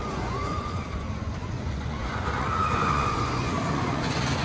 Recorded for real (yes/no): no